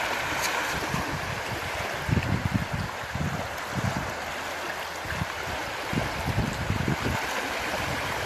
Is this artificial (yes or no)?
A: no